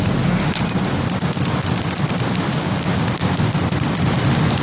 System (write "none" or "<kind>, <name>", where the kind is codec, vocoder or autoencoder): none